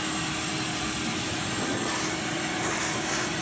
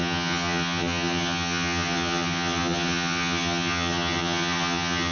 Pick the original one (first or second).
first